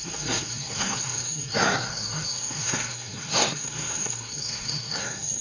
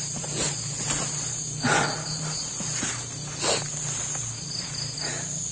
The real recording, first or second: second